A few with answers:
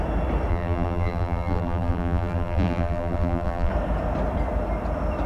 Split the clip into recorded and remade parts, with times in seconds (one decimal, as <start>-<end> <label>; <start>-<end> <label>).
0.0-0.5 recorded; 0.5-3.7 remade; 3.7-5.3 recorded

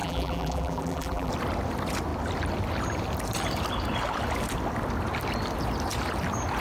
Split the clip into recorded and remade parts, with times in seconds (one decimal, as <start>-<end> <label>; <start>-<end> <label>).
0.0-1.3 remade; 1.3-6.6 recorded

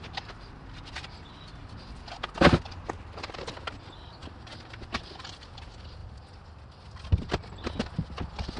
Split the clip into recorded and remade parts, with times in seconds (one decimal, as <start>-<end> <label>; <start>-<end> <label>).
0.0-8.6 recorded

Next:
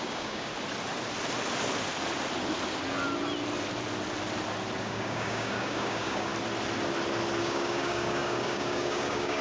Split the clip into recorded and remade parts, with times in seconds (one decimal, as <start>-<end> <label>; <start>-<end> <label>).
0.0-0.5 remade; 0.5-4.8 recorded; 4.8-6.3 remade; 6.3-7.4 recorded; 7.4-9.4 remade

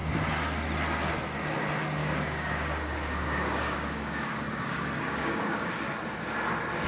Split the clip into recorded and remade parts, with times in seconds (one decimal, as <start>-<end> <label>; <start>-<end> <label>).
0.0-2.0 recorded; 2.0-5.7 remade; 5.7-6.9 recorded

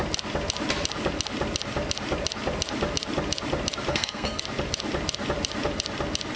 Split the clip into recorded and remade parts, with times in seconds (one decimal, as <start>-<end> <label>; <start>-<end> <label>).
0.0-3.9 recorded; 3.9-4.4 remade; 4.4-6.4 recorded

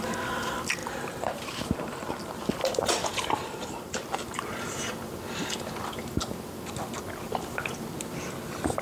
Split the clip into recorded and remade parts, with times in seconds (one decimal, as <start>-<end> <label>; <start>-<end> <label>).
0.0-0.8 recorded; 0.8-1.9 remade; 1.9-3.4 recorded; 3.4-4.7 remade; 4.7-8.8 recorded